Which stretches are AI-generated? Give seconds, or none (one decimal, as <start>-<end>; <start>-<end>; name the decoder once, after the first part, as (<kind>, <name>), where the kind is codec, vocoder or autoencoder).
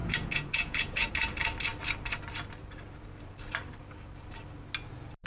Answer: 0.0-1.1 (vocoder, Vocos)